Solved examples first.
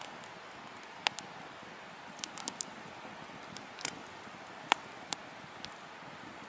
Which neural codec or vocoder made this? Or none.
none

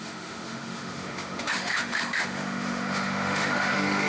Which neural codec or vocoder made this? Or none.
autoencoder, DAC-VAE